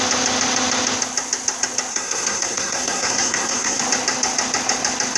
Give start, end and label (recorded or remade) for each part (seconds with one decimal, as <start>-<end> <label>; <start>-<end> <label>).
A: 0.0-1.9 recorded; 1.9-3.8 remade; 3.8-5.2 recorded